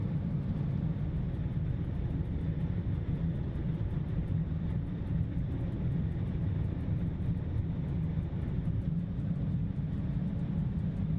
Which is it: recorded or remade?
remade